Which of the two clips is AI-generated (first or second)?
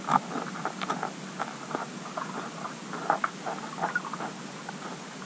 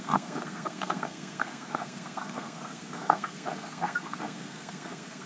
second